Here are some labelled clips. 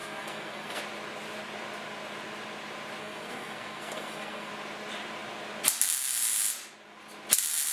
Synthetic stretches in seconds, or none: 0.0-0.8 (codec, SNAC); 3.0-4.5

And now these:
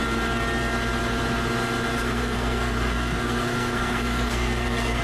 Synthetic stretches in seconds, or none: 1.9-5.0 (codec, SNAC)